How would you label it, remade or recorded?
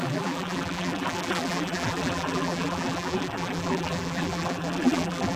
remade